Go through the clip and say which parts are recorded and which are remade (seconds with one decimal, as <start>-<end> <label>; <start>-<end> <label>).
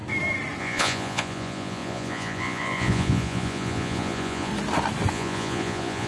0.0-0.6 recorded; 0.6-4.5 remade; 4.5-5.1 recorded; 5.1-6.1 remade